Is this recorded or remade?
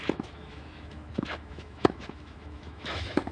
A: remade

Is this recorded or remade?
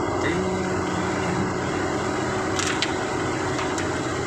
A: recorded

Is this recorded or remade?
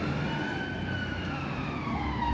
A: recorded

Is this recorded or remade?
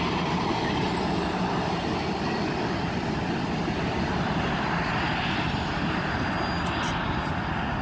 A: recorded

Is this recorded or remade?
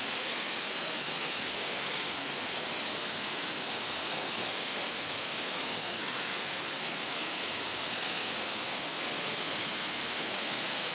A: remade